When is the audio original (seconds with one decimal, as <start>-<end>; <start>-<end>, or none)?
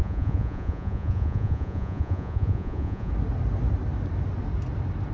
3.1-5.1